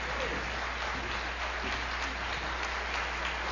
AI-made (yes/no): no